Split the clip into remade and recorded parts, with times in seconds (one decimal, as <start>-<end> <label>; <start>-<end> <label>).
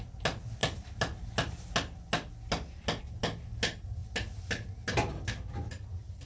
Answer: 0.0-6.3 recorded